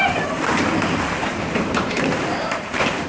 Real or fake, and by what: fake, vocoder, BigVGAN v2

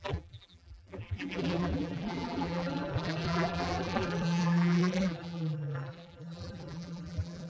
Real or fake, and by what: fake, vocoder, BigVGAN v2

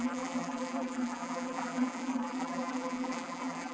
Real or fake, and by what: fake, vocoder, BigVGAN v2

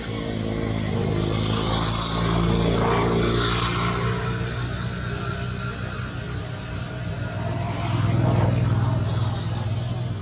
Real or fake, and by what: real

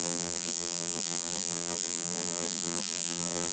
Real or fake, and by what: fake, vocoder, BigVGAN v2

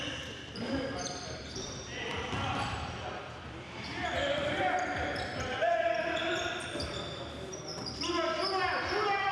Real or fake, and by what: fake, vocoder, BigVGAN v2